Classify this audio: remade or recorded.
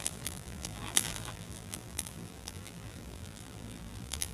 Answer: remade